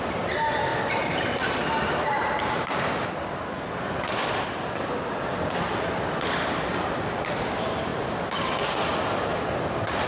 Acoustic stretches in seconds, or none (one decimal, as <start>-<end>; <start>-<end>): 0.0-0.7; 1.3-2.1; 2.8-10.1